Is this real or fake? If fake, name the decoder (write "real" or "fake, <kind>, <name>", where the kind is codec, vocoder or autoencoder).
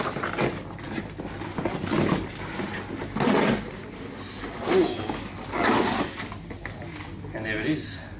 real